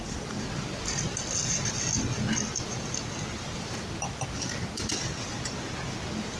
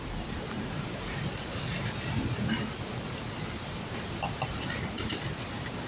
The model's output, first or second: second